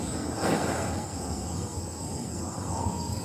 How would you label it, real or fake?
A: fake